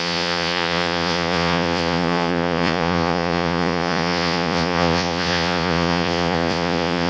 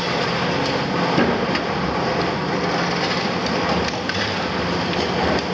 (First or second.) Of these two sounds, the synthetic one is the first